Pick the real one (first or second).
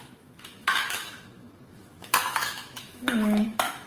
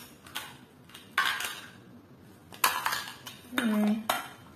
second